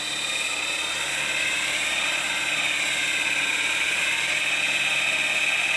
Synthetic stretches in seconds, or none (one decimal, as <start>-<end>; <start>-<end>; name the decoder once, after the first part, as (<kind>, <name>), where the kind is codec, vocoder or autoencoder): 0.5-4.0 (vocoder, BigVGAN v2)